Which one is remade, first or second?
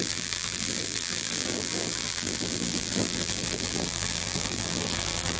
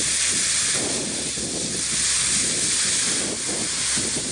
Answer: first